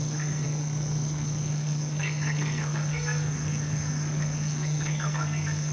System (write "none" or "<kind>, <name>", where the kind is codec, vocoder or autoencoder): codec, SNAC